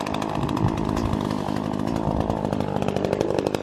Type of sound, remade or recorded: recorded